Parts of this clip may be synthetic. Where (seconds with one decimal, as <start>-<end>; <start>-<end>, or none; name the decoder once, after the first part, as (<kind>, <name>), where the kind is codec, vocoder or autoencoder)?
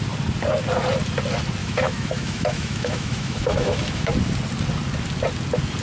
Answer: 1.6-4.1 (autoencoder, DAC-VAE)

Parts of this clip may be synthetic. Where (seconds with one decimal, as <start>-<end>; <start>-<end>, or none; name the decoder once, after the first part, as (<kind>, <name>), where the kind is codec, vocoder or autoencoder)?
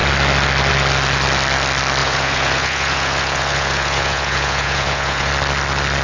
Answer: 2.0-5.3 (vocoder, Vocos)